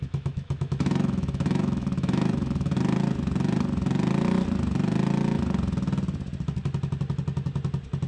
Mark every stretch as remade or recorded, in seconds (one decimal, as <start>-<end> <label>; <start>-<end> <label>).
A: 0.0-2.8 remade; 2.8-8.1 recorded